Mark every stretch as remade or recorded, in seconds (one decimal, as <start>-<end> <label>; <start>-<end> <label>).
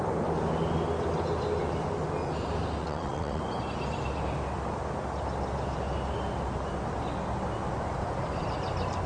0.0-2.8 recorded; 2.8-3.4 remade; 3.4-9.1 recorded